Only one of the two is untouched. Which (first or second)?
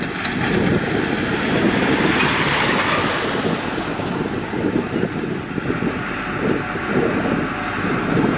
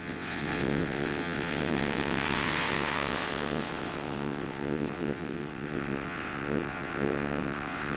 first